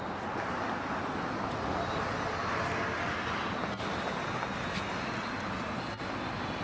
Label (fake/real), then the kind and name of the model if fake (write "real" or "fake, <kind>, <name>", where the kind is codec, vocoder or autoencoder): real